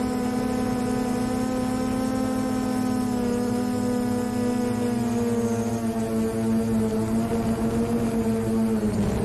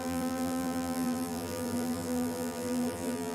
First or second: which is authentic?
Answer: first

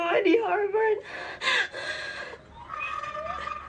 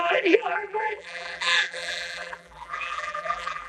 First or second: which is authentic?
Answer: first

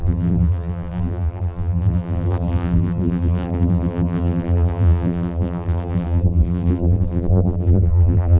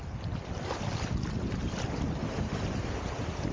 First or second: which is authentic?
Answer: second